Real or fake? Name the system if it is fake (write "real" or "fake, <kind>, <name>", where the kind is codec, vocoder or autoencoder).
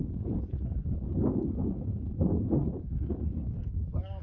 real